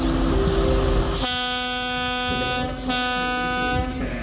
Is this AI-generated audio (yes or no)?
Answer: no